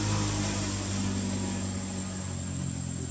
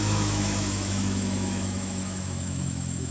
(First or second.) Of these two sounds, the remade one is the second